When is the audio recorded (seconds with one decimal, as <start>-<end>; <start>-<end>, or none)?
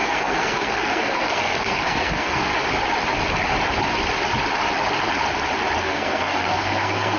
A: 2.5-5.8